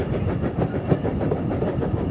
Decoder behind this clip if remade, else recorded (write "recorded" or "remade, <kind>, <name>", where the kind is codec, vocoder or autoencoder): recorded